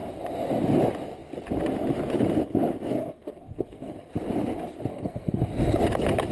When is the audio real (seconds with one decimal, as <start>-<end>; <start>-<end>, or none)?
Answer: 0.0-3.0; 4.1-4.9; 5.4-6.3